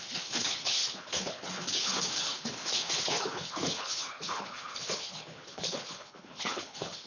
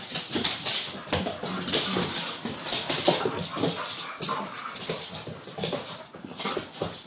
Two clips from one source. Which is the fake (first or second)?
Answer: first